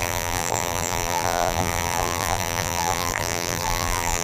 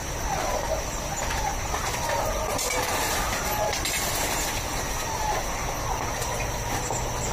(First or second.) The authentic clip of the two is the second